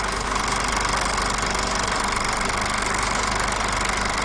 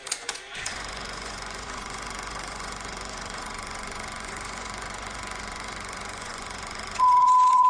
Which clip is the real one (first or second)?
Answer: first